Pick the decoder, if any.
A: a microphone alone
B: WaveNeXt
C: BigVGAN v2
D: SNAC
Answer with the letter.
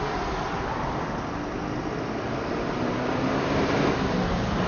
A